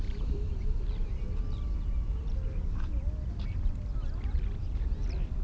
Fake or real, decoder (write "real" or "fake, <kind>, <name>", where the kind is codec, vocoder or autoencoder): real